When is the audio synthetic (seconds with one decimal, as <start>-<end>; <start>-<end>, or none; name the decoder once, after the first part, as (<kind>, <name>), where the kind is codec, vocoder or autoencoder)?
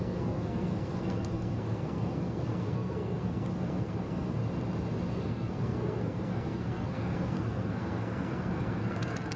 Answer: 0.0-4.4 (codec, SNAC); 5.1-9.4